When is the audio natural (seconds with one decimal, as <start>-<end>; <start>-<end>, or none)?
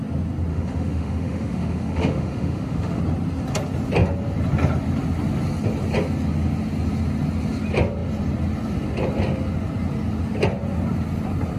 0.0-0.5; 3.0-11.6